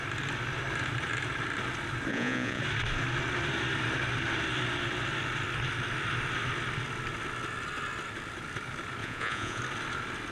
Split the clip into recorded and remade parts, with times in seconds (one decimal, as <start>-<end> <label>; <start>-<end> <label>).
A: 0.0-2.1 recorded; 2.1-2.6 remade; 2.6-9.0 recorded; 9.0-9.6 remade; 9.6-10.3 recorded